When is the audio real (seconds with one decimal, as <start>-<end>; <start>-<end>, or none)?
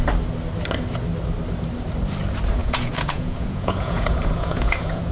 0.0-2.6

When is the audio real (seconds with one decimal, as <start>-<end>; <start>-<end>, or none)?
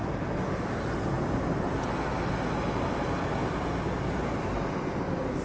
0.0-5.4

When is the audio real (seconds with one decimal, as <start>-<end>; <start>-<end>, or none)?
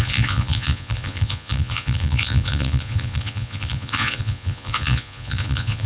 none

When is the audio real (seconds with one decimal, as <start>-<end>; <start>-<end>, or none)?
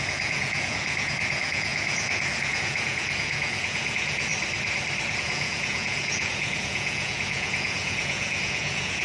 4.3-5.1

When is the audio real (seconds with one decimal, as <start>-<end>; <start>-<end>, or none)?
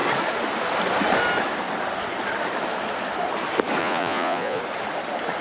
0.0-3.8; 4.6-5.4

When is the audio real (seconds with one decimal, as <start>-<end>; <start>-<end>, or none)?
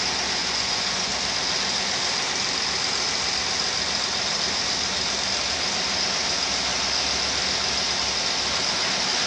0.0-0.4; 1.1-9.3